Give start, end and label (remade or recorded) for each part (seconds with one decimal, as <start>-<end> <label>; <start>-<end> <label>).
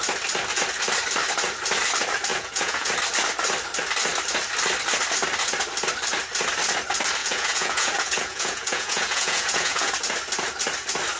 0.0-2.3 recorded; 2.3-2.9 remade; 2.9-7.2 recorded; 7.2-9.9 remade; 9.9-11.2 recorded